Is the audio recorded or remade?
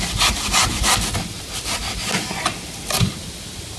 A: recorded